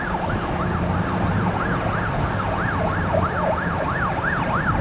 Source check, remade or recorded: recorded